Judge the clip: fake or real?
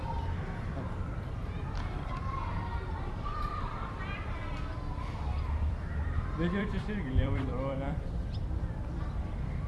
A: fake